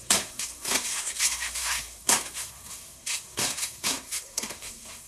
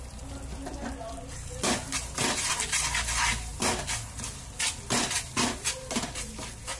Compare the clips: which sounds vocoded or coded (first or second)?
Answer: first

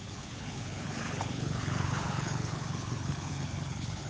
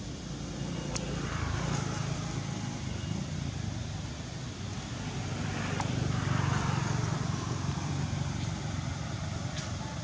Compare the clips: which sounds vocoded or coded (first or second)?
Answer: first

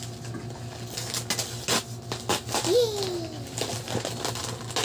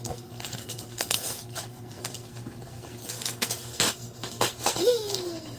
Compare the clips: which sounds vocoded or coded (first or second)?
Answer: second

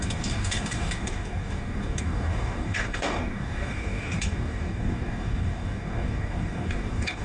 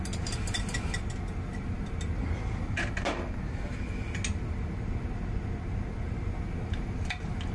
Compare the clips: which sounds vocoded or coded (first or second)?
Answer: first